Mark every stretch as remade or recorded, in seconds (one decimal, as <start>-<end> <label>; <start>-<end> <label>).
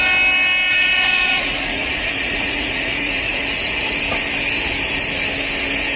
0.0-0.7 recorded; 0.7-4.0 remade; 4.0-6.0 recorded